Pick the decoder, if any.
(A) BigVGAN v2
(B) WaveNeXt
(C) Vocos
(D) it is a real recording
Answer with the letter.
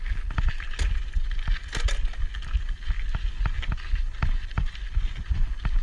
D